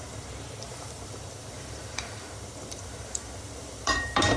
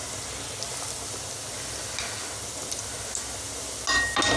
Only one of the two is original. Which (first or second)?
second